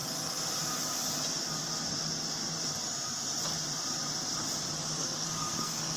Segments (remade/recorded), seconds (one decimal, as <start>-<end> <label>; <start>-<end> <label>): 0.0-5.0 recorded; 5.0-6.0 remade